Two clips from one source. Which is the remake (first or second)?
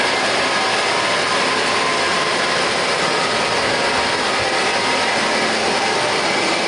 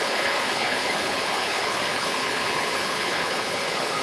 second